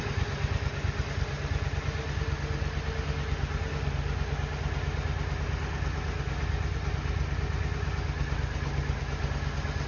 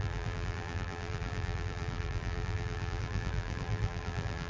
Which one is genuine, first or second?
first